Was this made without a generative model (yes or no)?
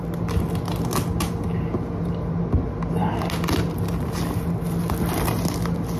yes